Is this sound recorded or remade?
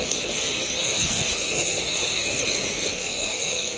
remade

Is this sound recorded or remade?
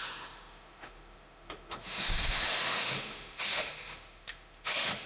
remade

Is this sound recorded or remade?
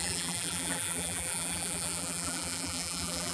remade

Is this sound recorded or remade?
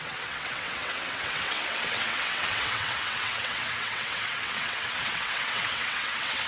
remade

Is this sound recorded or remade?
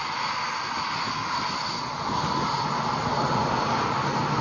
recorded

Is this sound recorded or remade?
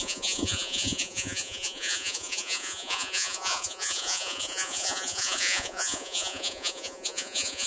remade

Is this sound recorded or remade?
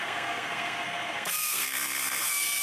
remade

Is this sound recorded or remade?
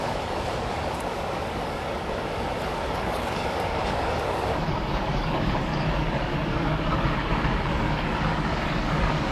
remade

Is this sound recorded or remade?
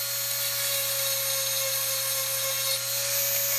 recorded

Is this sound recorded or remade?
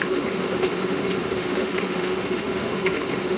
remade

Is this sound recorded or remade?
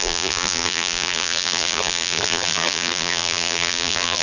remade